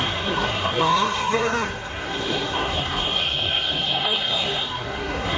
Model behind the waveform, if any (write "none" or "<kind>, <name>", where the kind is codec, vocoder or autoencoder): codec, SNAC